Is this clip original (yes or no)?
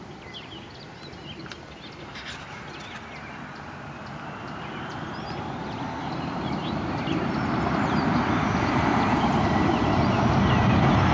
yes